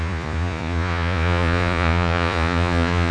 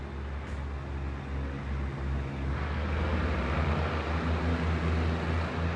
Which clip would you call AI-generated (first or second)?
first